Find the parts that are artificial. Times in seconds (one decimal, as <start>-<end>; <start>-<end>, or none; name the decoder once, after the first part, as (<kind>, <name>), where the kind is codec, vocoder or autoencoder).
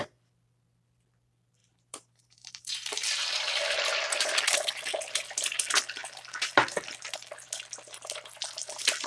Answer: 1.6-4.3 (vocoder, BigVGAN v2)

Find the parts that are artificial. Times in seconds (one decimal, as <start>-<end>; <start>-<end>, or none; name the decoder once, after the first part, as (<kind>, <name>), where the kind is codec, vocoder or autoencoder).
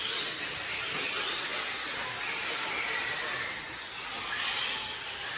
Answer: none